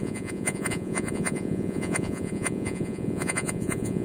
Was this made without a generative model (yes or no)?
no